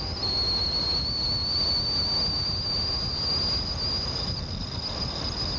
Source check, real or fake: real